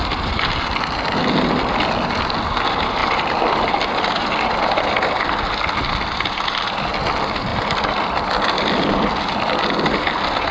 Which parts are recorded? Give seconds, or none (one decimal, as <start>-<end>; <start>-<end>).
0.0-3.0; 4.1-7.5; 10.1-10.5